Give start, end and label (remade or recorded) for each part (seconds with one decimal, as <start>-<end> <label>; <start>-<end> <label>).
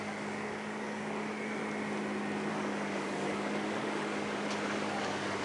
0.0-1.6 remade; 1.6-2.5 recorded; 2.5-5.4 remade